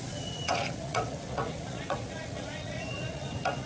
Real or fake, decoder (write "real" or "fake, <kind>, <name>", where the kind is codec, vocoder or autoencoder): fake, vocoder, Vocos